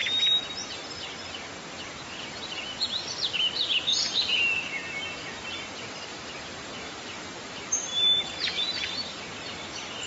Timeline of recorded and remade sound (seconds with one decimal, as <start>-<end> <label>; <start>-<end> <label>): 0.0-3.9 recorded; 3.9-4.4 remade; 4.4-6.1 recorded; 6.1-9.2 remade; 9.2-10.1 recorded